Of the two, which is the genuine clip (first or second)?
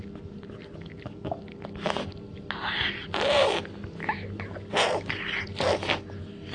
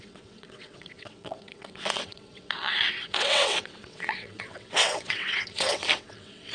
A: first